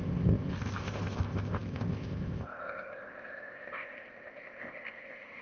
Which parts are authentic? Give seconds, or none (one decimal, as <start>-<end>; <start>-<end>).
none